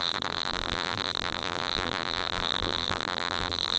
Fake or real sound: fake